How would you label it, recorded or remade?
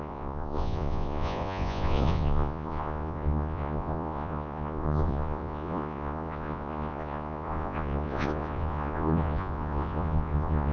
remade